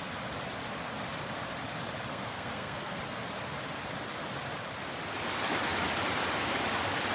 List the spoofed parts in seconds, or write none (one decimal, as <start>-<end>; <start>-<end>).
2.1-3.0